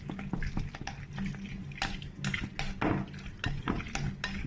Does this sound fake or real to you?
real